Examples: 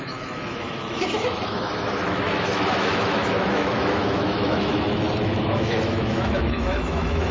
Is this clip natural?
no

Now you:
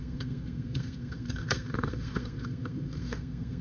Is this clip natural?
no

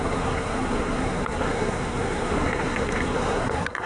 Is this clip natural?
no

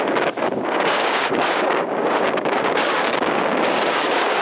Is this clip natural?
no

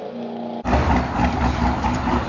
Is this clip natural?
yes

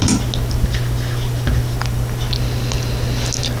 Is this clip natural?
yes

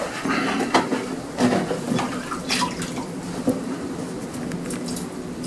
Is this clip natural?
yes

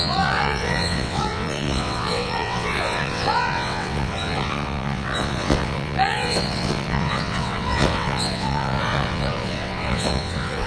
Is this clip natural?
no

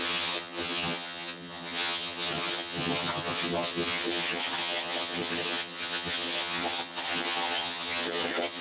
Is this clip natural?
no